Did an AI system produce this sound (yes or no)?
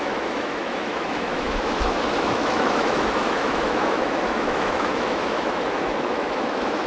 yes